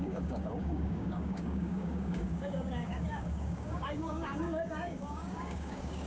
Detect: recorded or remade remade